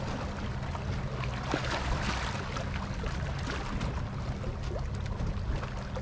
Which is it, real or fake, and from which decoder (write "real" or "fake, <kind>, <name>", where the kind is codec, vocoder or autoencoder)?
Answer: real